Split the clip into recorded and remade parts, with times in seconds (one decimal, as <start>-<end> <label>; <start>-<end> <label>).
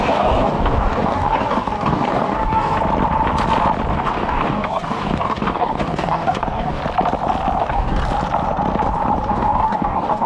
0.0-2.8 remade; 2.8-3.9 recorded; 3.9-6.8 remade; 6.8-7.6 recorded; 7.6-8.0 remade; 8.0-9.3 recorded; 9.3-10.3 remade